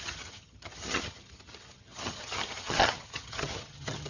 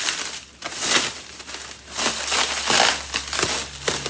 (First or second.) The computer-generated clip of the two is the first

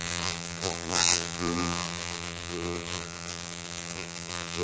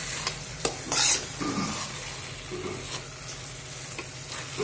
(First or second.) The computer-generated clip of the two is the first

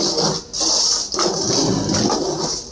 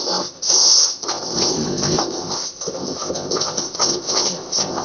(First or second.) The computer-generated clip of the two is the second